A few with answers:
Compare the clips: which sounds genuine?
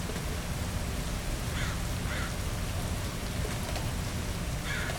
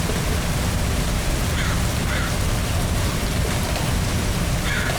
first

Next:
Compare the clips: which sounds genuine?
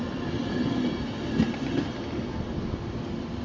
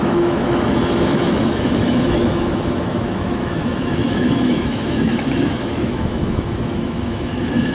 first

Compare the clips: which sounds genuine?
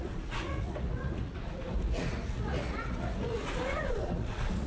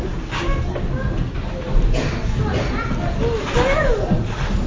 second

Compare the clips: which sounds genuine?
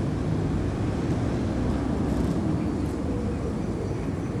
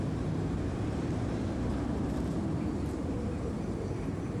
first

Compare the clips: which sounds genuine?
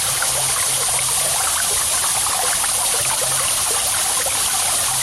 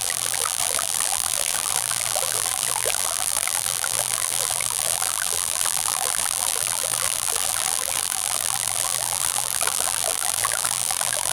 first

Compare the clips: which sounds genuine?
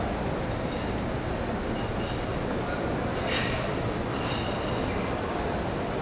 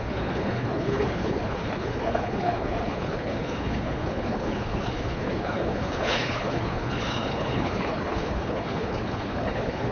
first